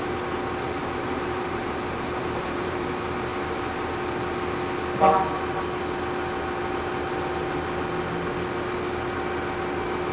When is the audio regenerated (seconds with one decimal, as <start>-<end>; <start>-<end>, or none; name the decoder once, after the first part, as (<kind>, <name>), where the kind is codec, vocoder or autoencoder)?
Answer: 0.8-2.8 (vocoder, BigVGAN v2)